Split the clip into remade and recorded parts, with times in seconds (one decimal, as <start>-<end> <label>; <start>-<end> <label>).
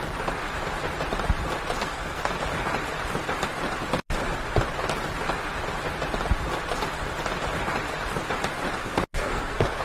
0.0-1.8 recorded; 1.8-2.3 remade; 2.3-8.8 recorded; 8.8-9.8 remade